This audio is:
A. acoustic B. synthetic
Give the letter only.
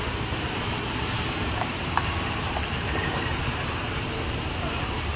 B